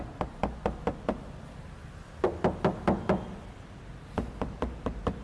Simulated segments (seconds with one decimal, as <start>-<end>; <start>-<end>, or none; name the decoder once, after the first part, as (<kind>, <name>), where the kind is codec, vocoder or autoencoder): none

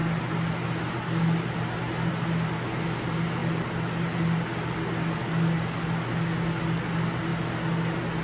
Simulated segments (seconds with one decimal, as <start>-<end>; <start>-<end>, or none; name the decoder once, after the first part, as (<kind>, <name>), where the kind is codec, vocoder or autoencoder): none

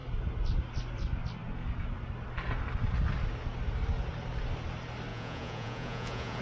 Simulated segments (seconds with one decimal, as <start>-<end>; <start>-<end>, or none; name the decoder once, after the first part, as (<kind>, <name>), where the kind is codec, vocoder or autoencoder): 5.1-6.4 (vocoder, Vocos)

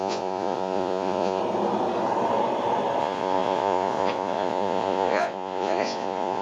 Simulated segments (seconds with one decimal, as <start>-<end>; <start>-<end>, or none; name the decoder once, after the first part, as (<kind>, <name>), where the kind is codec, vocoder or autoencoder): 0.0-1.4 (vocoder, Vocos); 3.0-6.4

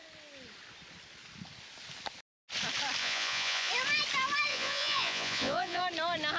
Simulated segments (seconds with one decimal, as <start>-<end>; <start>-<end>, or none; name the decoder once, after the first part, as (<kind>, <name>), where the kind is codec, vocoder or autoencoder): 3.0-3.7 (vocoder, Vocos); 4.5-5.8